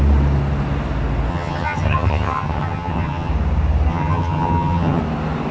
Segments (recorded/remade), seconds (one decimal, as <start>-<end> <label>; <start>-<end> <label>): 0.0-1.3 recorded; 1.3-3.3 remade; 3.3-3.9 recorded; 3.9-5.0 remade; 5.0-5.5 recorded